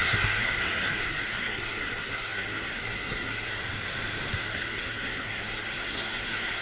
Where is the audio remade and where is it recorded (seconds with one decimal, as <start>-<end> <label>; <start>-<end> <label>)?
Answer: 0.0-3.6 remade; 3.6-4.3 recorded; 4.3-6.6 remade